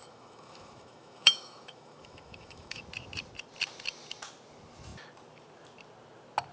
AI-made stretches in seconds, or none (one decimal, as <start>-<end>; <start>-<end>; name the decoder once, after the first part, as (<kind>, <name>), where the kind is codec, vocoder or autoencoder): 0.0-2.8 (autoencoder, DAC-VAE)